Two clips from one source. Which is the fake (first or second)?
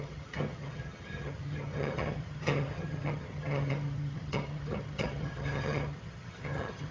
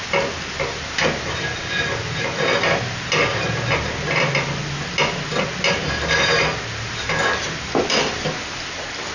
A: first